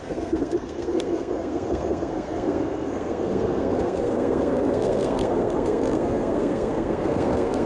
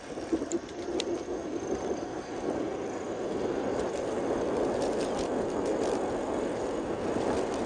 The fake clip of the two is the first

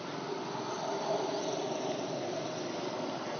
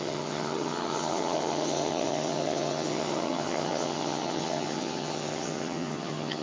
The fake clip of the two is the second